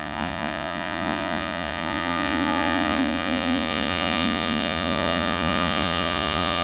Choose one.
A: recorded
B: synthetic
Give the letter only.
B